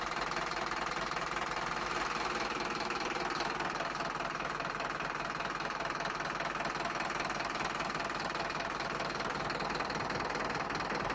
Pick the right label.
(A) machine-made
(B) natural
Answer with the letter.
B